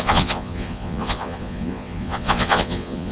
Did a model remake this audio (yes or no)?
yes